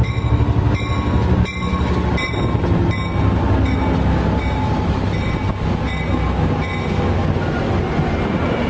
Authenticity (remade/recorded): recorded